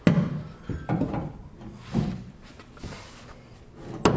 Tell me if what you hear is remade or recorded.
recorded